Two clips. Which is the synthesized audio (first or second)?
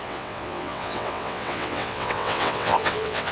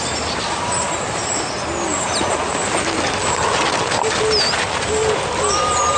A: first